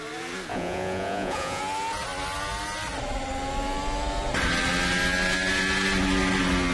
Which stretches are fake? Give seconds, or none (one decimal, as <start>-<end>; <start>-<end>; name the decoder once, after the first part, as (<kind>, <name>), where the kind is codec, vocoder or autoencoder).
0.5-1.6 (vocoder, Vocos)